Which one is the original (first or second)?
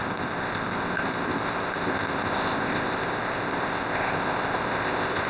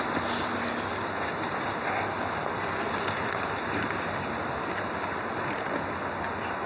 second